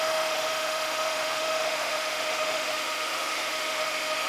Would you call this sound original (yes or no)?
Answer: no